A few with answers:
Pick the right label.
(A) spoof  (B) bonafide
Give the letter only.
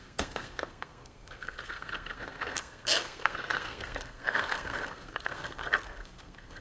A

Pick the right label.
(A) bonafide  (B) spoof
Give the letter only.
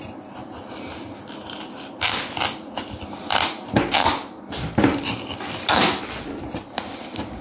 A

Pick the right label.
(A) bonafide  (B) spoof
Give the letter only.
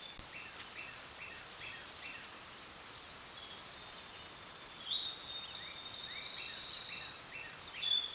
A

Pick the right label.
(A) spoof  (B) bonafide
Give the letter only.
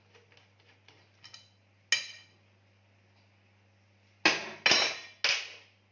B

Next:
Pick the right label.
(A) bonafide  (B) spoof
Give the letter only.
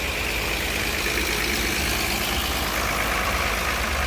A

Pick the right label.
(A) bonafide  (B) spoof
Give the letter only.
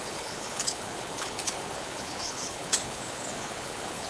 B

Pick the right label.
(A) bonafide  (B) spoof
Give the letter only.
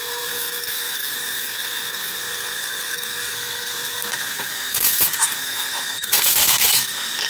B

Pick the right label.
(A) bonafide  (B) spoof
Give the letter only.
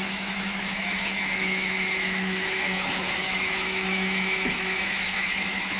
B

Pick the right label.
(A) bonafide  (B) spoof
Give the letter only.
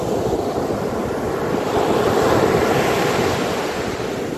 A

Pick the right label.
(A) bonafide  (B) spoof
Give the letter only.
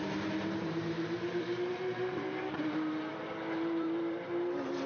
B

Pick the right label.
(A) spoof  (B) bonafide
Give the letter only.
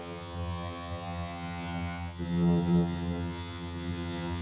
A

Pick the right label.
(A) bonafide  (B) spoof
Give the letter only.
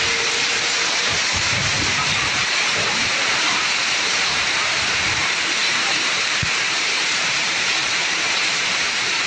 B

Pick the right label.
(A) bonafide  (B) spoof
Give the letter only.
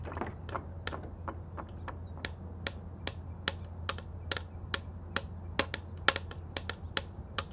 A